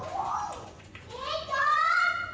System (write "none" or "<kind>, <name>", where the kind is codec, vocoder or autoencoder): vocoder, Vocos